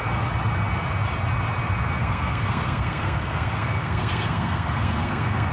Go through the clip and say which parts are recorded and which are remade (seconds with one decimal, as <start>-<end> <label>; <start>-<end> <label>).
0.0-2.0 recorded; 2.0-5.5 remade